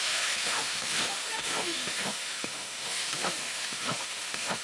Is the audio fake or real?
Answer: fake